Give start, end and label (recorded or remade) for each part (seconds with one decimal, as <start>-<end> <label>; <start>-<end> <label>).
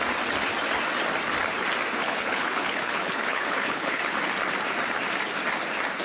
0.0-2.0 recorded; 2.0-4.0 remade; 4.0-6.0 recorded